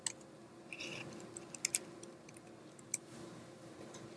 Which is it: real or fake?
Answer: real